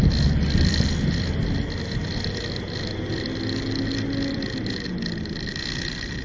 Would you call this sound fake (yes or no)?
no